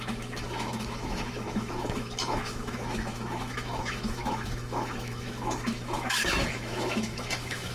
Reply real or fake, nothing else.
fake